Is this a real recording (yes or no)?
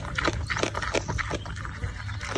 yes